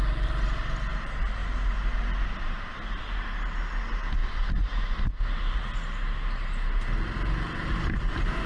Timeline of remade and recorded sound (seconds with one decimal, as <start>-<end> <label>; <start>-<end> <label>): 0.0-8.5 recorded